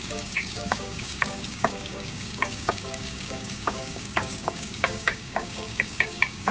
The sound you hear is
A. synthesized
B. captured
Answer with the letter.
A